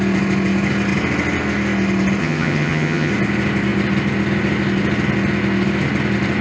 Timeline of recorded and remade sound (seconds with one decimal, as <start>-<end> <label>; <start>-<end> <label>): 0.0-2.2 recorded; 2.2-3.1 remade; 3.1-6.4 recorded